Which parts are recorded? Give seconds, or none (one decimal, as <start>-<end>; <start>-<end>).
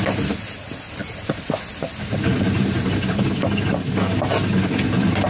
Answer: 0.0-5.3